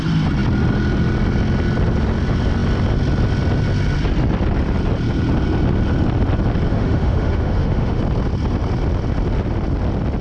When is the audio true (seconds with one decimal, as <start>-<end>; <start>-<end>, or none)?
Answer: 0.0-6.7; 8.0-10.2